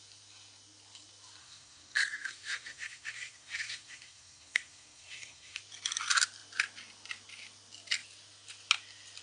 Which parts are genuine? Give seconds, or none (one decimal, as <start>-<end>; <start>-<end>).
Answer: 0.0-1.4; 5.6-9.2